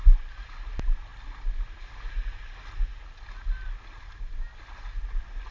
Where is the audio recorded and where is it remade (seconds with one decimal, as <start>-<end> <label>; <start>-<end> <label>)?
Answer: 0.0-1.1 recorded; 1.1-2.1 remade; 2.1-5.5 recorded